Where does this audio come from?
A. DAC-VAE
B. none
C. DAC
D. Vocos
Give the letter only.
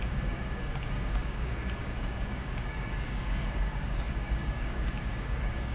C